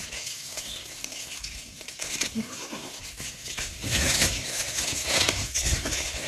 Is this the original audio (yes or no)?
no